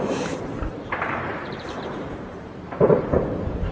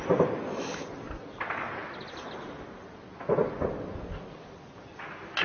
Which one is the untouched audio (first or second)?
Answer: second